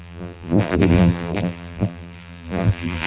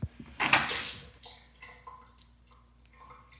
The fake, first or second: first